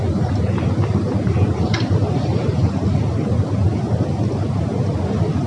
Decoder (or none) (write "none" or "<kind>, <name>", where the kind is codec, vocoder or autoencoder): none